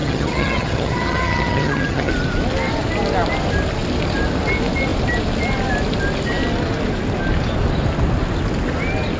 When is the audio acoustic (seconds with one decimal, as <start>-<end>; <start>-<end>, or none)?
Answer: 2.1-9.2